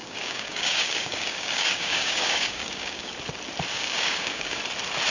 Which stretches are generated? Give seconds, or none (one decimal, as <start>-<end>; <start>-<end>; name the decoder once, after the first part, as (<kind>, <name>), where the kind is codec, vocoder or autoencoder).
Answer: 0.0-3.1 (codec, DAC); 3.7-4.6